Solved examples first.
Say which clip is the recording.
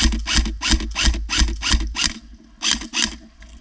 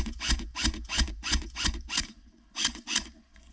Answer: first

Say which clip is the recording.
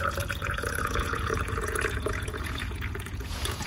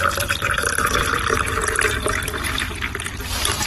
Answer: second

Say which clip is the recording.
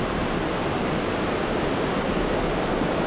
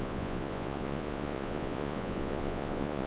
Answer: first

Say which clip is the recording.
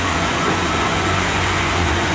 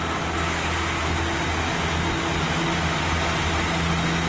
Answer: second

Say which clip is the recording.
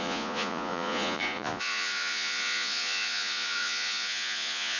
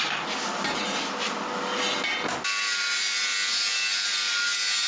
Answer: second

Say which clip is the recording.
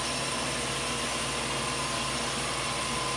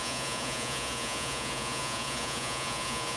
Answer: first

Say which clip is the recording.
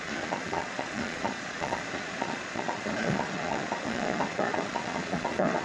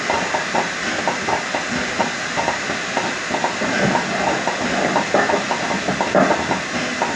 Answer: second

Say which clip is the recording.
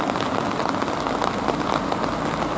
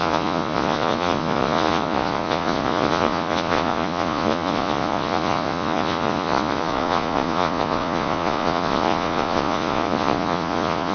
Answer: first